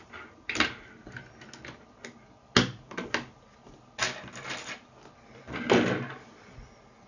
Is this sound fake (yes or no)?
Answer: no